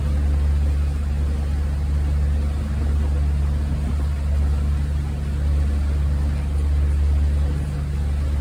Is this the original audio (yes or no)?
yes